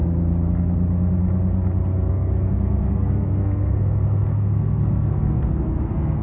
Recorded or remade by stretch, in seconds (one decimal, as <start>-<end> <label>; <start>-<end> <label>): 0.0-2.1 recorded; 2.1-6.2 remade